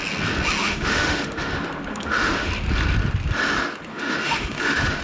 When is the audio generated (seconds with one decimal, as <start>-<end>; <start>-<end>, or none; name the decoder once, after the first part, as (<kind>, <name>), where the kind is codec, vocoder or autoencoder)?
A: 0.6-1.5 (autoencoder, DAC-VAE); 1.9-2.5; 3.9-5.0